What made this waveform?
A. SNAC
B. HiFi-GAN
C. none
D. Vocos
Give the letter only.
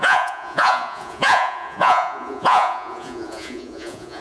D